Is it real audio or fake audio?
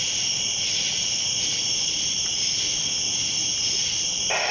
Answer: real